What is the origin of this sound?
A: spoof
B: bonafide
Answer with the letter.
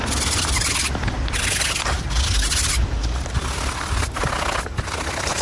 B